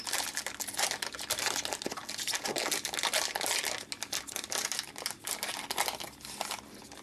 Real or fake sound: real